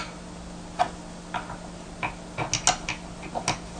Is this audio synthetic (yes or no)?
no